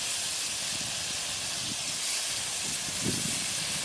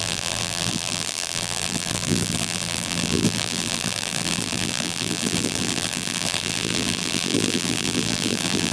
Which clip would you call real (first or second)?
first